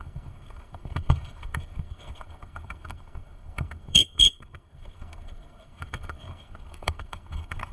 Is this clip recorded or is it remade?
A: remade